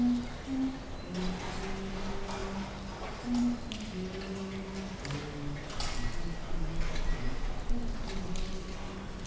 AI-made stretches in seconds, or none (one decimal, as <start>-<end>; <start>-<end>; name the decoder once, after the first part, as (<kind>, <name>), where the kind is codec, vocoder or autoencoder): none

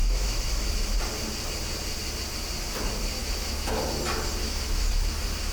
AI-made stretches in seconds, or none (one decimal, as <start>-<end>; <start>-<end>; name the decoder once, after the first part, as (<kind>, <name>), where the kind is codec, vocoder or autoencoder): 0.0-0.7 (autoencoder, DAC-VAE); 3.2-3.8; 4.4-5.0

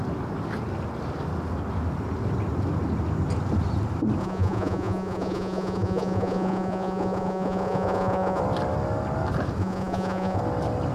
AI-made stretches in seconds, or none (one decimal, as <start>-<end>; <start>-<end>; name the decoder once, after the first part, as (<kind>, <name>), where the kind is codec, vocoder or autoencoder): 4.2-8.4 (vocoder, Vocos); 9.6-10.4

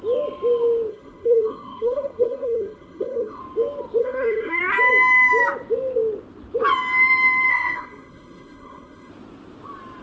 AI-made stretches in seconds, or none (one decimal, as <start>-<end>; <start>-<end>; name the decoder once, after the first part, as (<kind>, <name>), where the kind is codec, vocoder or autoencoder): 0.9-3.4 (codec, SNAC); 4.0-4.6; 7.5-9.1